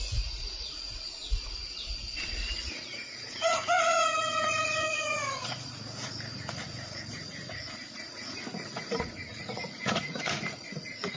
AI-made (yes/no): yes